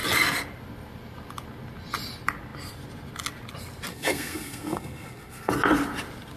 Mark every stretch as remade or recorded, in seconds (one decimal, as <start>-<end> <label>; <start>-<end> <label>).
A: 0.0-3.9 recorded; 3.9-5.5 remade; 5.5-6.4 recorded